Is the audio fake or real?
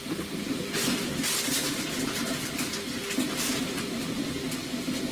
real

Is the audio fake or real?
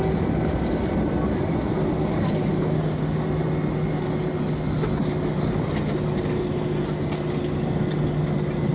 real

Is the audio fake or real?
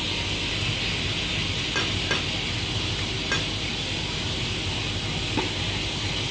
real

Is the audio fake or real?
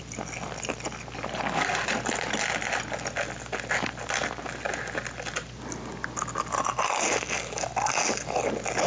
real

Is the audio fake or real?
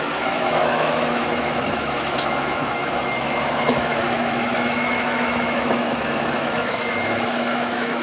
fake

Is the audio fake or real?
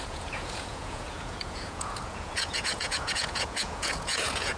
fake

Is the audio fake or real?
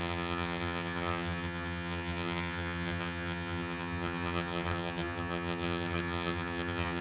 fake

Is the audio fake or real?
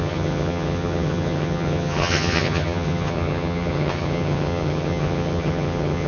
fake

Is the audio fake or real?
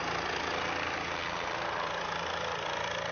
real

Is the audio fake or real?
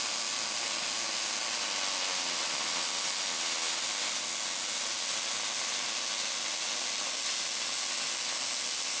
real